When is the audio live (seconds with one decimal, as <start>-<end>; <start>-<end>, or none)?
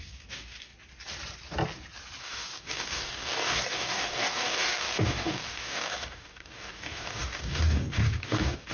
0.7-2.2